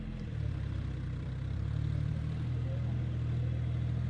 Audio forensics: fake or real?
fake